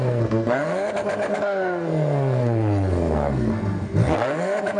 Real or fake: fake